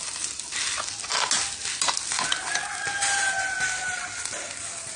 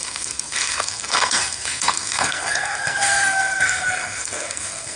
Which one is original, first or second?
first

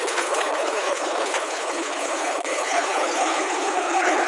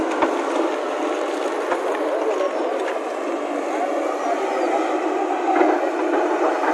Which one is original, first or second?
second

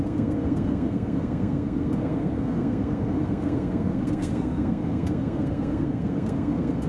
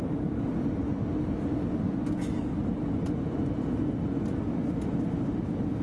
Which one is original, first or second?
second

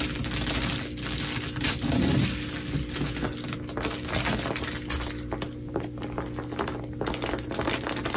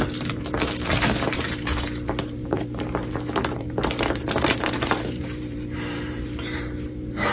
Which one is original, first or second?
first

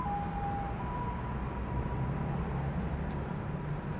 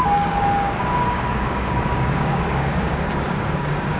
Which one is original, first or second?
first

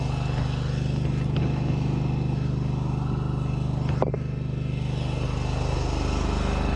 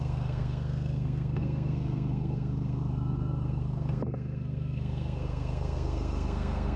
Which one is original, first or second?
first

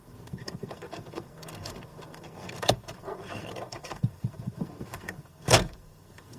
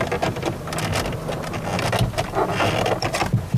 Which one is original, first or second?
second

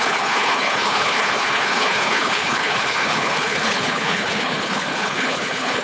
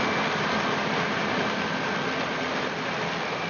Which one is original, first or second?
second